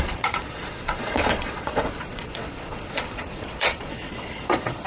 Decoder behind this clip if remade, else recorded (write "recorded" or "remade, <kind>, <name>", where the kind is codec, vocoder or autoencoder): remade, vocoder, Vocos